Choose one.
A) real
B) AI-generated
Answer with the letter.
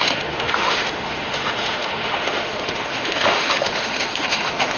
B